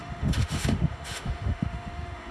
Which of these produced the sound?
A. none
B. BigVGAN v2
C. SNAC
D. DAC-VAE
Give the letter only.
D